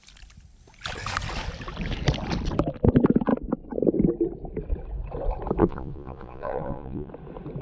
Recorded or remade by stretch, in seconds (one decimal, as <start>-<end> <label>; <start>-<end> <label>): 0.0-5.6 recorded; 5.6-7.1 remade; 7.1-7.6 recorded